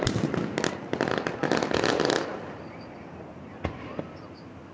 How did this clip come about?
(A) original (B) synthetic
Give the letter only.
A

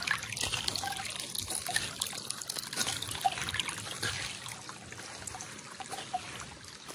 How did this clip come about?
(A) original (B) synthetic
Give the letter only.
A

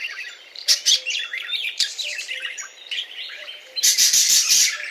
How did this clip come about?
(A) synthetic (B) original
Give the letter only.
A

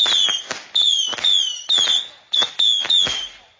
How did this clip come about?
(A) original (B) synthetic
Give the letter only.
A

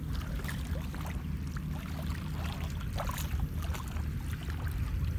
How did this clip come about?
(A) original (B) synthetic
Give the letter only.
A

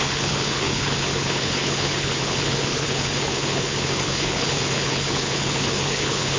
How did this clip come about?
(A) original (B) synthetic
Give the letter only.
B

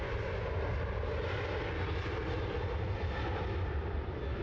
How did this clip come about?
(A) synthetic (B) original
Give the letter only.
B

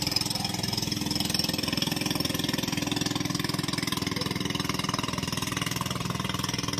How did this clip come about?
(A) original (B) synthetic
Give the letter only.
A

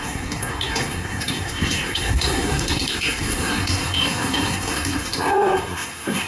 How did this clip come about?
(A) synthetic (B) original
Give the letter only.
A